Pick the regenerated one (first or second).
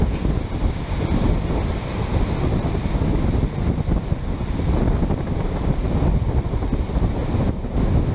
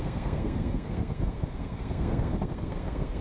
second